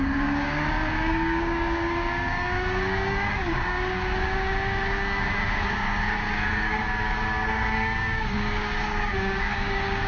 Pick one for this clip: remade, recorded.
remade